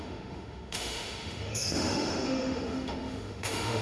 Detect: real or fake fake